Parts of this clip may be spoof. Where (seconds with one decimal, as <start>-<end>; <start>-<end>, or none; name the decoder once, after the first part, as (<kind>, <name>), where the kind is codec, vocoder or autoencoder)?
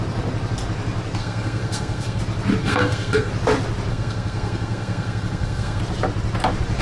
1.2-2.2 (codec, SNAC); 2.6-3.3; 3.9-5.8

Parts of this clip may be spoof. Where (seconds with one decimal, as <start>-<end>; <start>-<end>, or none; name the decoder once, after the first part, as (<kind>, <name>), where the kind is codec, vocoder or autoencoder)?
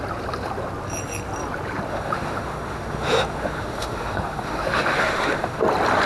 1.9-5.6 (autoencoder, DAC-VAE)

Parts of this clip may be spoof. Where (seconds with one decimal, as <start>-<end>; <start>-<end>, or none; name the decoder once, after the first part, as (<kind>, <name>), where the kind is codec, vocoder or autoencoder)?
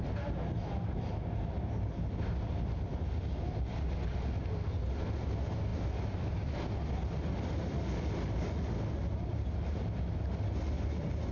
none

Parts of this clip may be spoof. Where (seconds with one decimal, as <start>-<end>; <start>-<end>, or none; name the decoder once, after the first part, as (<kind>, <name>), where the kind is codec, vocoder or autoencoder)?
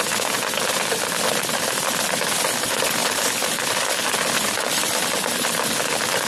none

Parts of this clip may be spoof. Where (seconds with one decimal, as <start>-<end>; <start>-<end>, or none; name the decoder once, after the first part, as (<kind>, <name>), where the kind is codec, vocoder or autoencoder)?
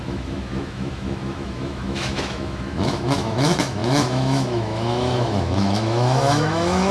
0.0-6.9 (autoencoder, DAC-VAE)